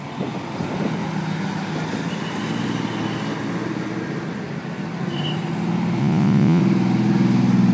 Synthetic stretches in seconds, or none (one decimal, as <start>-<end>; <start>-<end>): 6.0-6.6